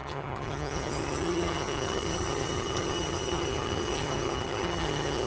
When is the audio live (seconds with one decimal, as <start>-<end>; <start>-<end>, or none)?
none